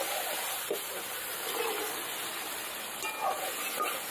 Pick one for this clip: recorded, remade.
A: recorded